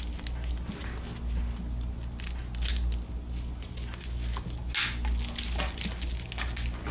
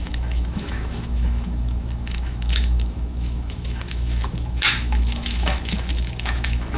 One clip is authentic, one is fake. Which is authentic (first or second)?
first